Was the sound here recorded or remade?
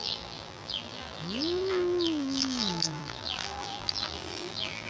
remade